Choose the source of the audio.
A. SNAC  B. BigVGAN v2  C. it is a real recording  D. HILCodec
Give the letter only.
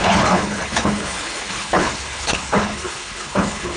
D